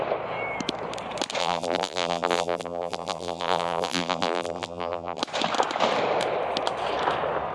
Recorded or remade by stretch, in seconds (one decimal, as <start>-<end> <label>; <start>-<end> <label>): 0.0-1.4 recorded; 1.4-5.2 remade; 5.2-7.5 recorded